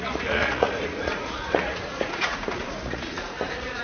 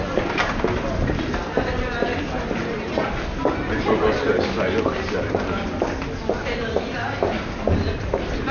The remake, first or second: first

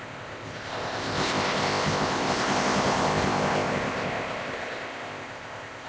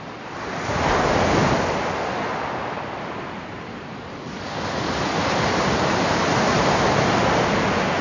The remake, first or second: first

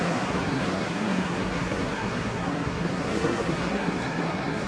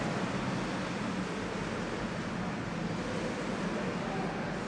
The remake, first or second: first